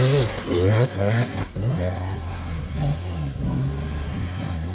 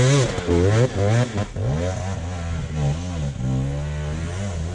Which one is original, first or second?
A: second